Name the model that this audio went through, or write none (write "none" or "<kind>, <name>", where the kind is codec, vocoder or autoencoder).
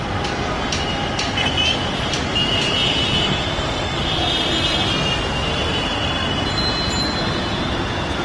none